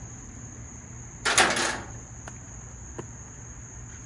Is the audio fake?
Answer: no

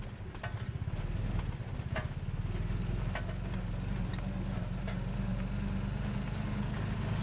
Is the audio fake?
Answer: no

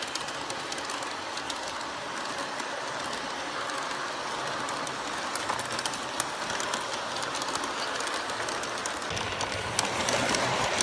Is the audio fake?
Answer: no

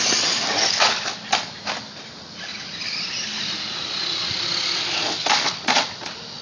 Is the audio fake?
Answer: no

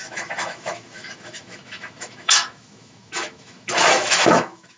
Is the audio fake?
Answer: yes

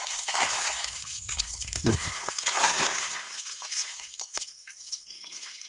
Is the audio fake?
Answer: yes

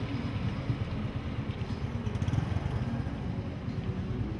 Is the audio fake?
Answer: no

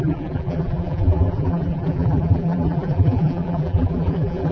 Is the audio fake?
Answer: yes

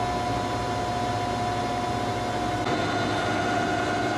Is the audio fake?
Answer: no